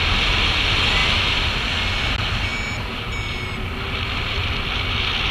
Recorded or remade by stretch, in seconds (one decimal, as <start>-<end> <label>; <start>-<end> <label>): 0.0-5.3 recorded